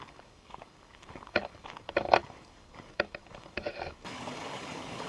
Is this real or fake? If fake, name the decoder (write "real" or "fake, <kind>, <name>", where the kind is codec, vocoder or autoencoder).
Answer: fake, codec, DAC